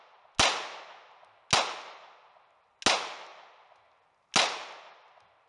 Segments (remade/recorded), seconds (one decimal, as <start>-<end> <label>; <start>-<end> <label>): 0.0-5.5 recorded